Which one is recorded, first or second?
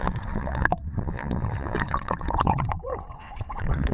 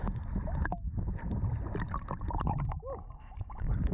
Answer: second